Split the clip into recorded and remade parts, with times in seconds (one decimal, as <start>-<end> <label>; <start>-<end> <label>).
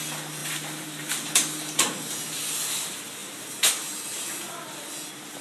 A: 0.0-0.4 recorded; 0.4-2.4 remade; 2.4-3.2 recorded; 3.2-4.5 remade; 4.5-5.4 recorded